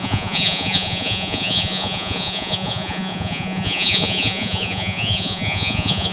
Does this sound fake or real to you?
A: fake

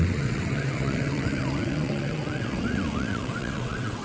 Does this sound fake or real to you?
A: fake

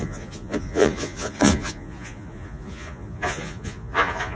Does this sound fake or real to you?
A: fake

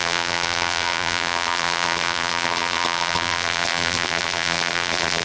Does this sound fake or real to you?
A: fake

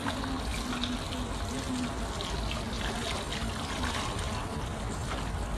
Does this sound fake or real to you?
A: real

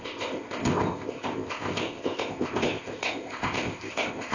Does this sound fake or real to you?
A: fake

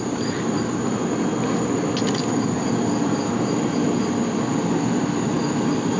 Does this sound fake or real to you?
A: real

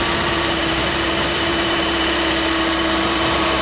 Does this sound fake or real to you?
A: fake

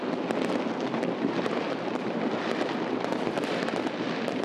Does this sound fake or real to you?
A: real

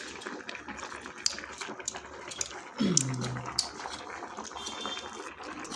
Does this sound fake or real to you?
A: real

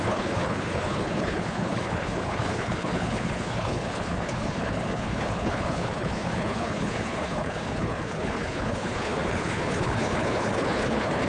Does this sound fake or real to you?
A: fake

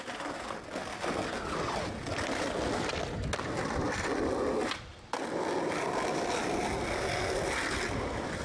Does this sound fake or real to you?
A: real